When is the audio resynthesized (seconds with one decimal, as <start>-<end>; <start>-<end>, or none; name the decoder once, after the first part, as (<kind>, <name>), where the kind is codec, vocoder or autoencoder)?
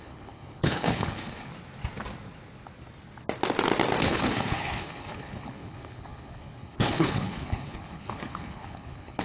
0.0-1.5 (codec, HILCodec); 4.0-9.2